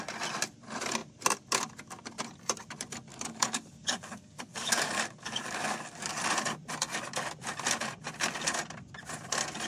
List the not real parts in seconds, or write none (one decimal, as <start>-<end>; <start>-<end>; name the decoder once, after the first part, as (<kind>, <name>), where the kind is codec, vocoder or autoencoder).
3.1-6.1 (codec, DAC)